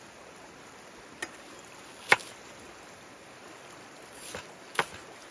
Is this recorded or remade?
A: recorded